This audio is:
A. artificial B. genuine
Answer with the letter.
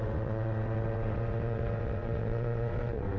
A